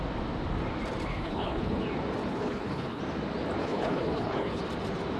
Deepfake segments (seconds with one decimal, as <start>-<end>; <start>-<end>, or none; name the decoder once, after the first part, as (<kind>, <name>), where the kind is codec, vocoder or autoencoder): 1.1-1.8 (codec, HILCodec); 2.2-3.0; 3.6-4.6